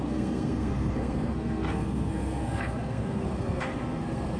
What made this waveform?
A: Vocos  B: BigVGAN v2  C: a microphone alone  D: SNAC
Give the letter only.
D